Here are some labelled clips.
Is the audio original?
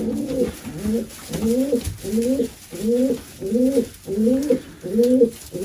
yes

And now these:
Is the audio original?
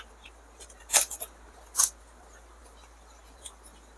yes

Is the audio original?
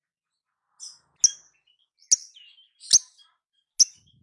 yes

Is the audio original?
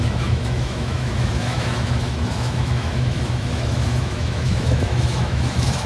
no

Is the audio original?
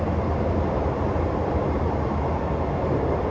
yes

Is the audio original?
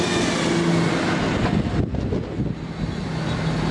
yes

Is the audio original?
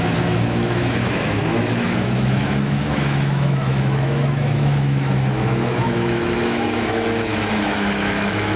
no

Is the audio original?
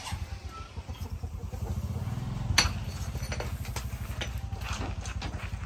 yes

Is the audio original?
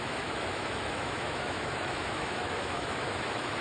no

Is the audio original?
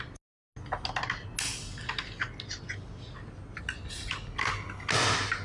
yes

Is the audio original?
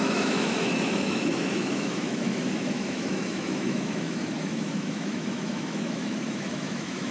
no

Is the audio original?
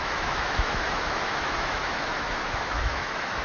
no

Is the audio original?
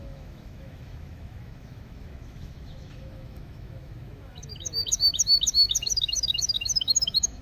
no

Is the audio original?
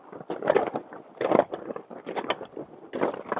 yes